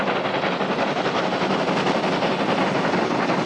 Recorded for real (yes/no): yes